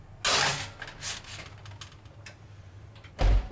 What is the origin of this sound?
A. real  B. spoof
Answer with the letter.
A